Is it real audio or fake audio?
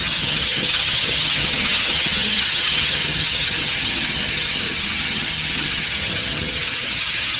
fake